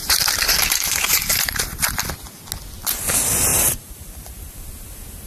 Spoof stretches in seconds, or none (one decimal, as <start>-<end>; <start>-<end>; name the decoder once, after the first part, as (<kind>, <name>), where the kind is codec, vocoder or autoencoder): 0.0-2.1 (vocoder, BigVGAN v2)

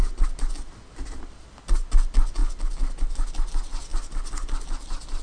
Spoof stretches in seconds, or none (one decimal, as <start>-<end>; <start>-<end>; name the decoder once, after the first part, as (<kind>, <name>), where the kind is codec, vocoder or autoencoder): none

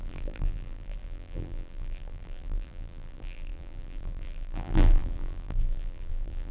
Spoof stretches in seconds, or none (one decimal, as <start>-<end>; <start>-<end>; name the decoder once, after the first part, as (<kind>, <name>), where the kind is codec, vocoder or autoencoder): 0.0-6.5 (vocoder, BigVGAN v2)